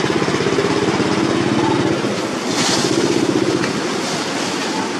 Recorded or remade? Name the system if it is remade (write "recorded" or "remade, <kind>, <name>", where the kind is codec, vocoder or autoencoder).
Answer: recorded